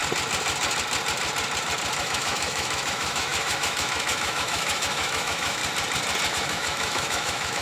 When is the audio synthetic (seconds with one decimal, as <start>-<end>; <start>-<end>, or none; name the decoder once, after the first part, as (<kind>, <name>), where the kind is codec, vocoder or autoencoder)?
2.0-5.6 (autoencoder, DAC-VAE); 6.3-7.6